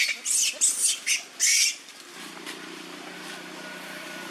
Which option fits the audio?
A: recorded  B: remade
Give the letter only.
A